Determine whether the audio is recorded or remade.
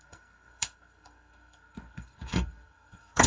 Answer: remade